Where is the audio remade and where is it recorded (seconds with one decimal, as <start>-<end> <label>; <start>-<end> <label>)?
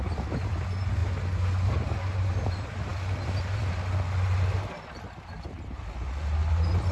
0.0-6.9 recorded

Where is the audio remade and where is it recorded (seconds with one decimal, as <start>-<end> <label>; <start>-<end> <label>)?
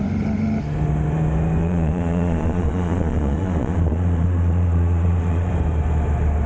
0.0-1.6 recorded; 1.6-5.5 remade; 5.5-6.5 recorded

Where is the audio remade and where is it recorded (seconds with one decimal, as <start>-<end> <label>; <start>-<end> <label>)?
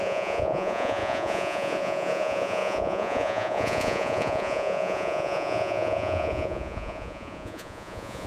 0.0-8.3 remade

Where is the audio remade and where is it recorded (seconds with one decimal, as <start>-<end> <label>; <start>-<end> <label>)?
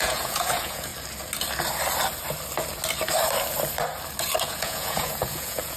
0.0-0.9 remade; 0.9-4.4 recorded; 4.4-5.8 remade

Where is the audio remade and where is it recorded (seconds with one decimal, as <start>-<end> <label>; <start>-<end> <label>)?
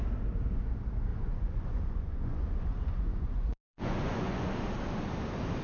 0.0-1.1 recorded; 1.1-4.5 remade; 4.5-5.6 recorded